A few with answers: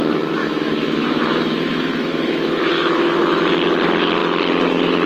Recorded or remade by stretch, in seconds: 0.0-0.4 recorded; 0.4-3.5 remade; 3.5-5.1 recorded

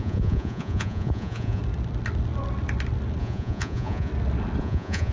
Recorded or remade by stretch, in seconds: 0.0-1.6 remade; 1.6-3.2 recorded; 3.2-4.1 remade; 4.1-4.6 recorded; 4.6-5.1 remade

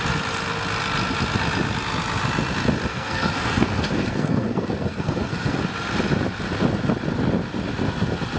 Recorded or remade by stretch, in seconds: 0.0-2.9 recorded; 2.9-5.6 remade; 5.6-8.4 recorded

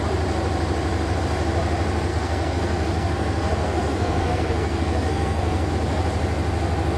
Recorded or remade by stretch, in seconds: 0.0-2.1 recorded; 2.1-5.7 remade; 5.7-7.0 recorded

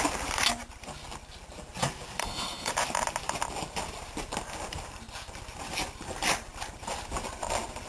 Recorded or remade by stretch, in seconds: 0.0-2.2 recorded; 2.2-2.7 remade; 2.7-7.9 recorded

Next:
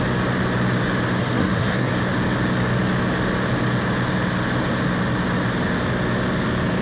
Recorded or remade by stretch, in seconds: 0.0-1.2 recorded; 1.2-1.9 remade; 1.9-6.8 recorded

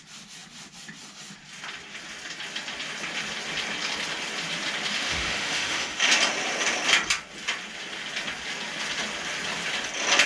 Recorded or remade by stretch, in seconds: 0.0-4.9 recorded; 4.9-6.0 remade; 6.0-10.3 recorded